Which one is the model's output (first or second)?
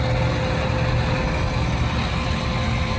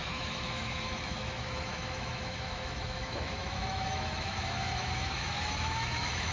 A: second